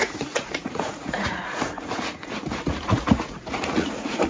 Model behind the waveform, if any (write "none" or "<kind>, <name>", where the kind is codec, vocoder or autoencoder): vocoder, Vocos